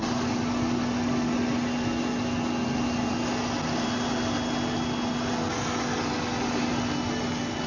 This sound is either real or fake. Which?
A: real